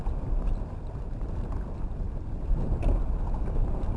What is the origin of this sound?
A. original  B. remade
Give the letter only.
A